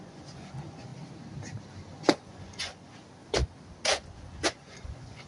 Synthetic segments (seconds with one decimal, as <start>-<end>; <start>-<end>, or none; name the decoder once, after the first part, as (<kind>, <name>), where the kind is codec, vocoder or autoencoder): 0.0-0.9 (vocoder, Vocos); 1.9-3.0; 3.9-5.3